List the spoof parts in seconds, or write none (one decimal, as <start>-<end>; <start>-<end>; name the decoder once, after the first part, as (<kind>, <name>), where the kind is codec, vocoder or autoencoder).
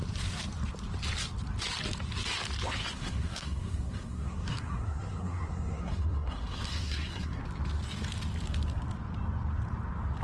2.8-7.4 (codec, SNAC)